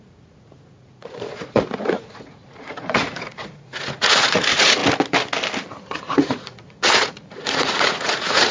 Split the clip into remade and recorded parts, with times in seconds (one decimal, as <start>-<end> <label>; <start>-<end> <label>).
0.0-4.8 remade; 4.8-5.8 recorded; 5.8-8.5 remade

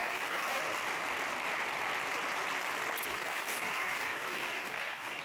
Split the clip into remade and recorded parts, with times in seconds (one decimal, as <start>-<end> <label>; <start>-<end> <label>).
0.0-0.6 remade; 0.6-3.1 recorded; 3.1-5.2 remade

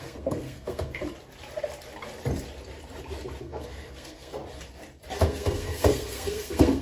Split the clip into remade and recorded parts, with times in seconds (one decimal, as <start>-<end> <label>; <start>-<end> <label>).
0.0-1.0 remade; 1.0-3.4 recorded; 3.4-4.4 remade; 4.4-5.1 recorded; 5.1-6.8 remade

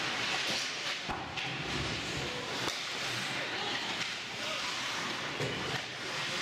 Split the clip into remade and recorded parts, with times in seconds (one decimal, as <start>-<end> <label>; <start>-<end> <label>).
0.0-6.4 recorded

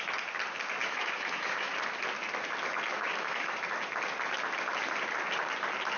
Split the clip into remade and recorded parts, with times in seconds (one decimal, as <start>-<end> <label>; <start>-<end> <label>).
0.0-0.8 recorded; 0.8-1.7 remade; 1.7-2.9 recorded; 2.9-3.5 remade; 3.5-6.0 recorded